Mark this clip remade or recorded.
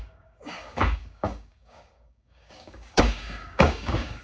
remade